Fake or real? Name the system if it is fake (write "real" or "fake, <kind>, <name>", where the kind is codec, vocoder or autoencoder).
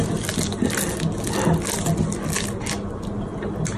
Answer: real